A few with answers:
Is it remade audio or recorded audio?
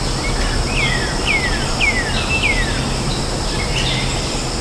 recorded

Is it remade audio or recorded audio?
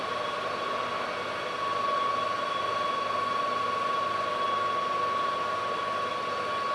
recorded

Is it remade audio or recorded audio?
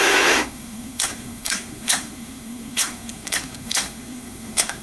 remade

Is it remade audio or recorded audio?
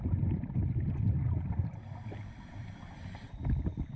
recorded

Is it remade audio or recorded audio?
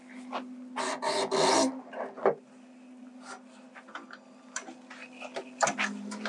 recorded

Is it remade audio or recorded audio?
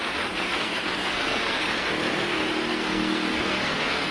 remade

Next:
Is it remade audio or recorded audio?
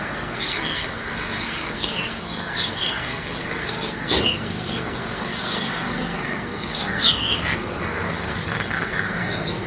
remade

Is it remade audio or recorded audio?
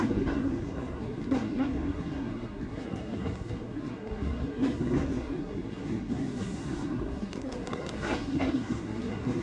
remade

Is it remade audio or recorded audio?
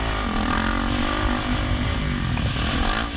recorded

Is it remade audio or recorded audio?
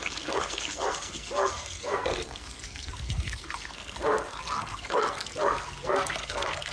remade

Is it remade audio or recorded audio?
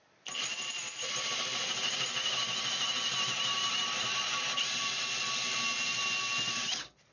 recorded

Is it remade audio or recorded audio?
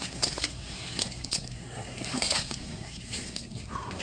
remade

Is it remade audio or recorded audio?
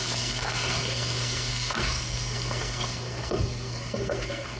remade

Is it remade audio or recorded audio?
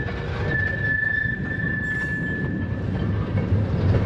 recorded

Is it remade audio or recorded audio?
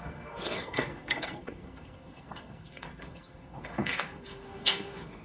remade